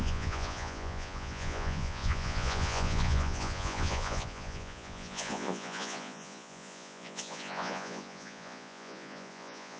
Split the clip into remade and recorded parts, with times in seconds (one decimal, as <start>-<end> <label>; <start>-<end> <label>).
0.0-9.8 remade